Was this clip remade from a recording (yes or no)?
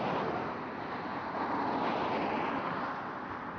no